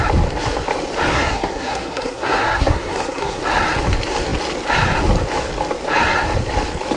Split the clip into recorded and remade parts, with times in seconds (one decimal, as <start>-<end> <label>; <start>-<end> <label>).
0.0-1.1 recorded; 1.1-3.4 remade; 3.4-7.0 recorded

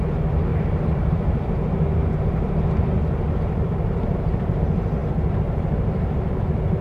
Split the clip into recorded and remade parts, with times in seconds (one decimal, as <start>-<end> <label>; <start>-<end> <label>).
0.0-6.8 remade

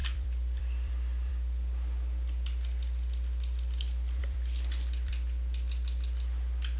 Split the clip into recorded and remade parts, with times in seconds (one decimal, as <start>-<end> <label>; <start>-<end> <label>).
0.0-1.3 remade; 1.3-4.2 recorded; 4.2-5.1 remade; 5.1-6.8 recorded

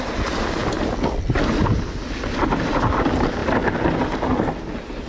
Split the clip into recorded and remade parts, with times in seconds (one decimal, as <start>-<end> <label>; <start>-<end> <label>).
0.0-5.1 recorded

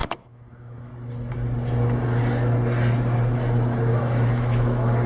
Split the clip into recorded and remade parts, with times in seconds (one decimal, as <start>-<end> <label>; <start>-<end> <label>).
0.0-0.9 remade; 0.9-4.0 recorded; 4.0-5.1 remade

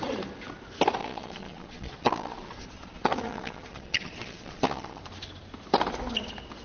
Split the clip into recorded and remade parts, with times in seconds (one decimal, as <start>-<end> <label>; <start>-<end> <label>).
0.0-1.0 recorded; 1.0-5.0 remade; 5.0-6.6 recorded

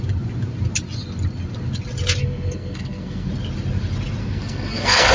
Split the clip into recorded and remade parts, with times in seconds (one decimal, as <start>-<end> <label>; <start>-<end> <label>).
0.0-2.2 recorded; 2.2-3.3 remade; 3.3-4.2 recorded; 4.2-5.1 remade

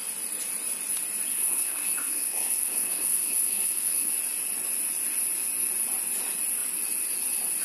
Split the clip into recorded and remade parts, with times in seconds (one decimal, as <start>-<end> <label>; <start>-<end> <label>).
0.0-1.3 recorded; 1.3-4.1 remade; 4.1-7.6 recorded